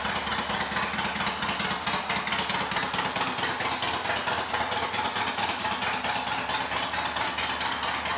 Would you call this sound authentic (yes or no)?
yes